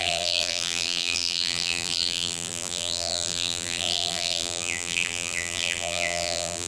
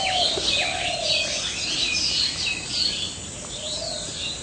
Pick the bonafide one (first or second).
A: second